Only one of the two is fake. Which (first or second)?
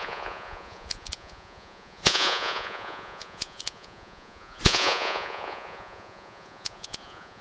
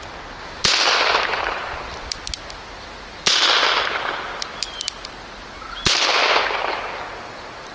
first